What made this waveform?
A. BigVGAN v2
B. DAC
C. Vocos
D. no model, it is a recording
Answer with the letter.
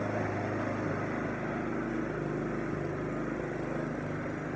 D